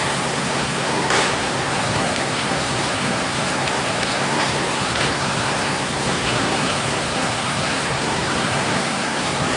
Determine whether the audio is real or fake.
fake